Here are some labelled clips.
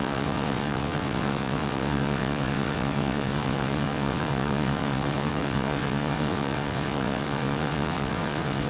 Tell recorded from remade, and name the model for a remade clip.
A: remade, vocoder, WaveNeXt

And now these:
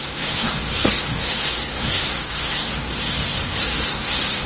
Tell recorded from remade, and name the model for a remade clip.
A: remade, codec, SNAC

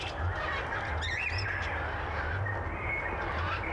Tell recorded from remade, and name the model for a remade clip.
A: recorded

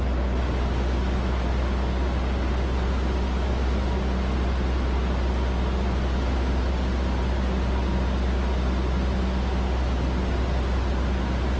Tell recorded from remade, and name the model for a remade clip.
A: recorded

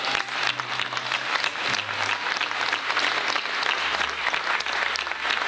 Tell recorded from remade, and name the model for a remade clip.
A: recorded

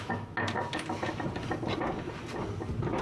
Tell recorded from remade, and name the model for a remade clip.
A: recorded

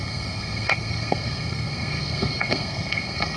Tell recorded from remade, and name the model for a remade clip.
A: remade, codec, SNAC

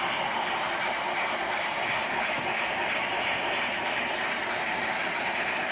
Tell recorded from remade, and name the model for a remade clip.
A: recorded